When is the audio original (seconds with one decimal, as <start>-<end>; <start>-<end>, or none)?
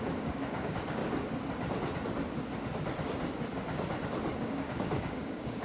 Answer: 1.0-4.4